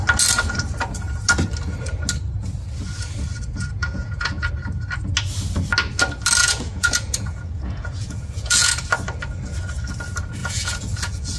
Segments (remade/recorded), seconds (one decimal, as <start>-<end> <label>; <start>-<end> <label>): 0.0-3.8 recorded; 3.8-4.5 remade; 4.5-6.4 recorded; 6.4-8.7 remade; 8.7-10.4 recorded; 10.4-11.4 remade